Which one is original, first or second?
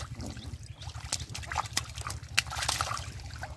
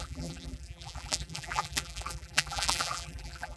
first